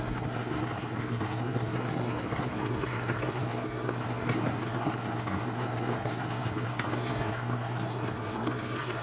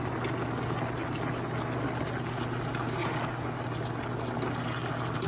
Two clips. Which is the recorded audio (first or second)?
second